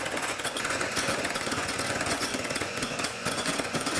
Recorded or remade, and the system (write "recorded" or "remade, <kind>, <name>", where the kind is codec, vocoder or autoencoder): remade, vocoder, Vocos